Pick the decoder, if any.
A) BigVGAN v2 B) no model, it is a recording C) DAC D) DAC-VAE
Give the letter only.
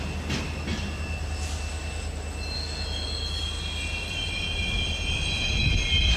B